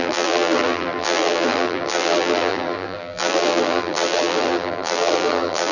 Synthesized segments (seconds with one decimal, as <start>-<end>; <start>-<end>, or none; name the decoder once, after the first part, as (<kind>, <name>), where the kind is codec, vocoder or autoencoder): 0.0-5.7 (vocoder, BigVGAN v2)